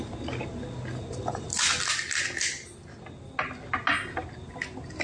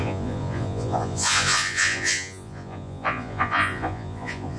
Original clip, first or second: first